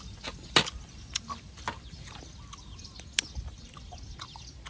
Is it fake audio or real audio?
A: real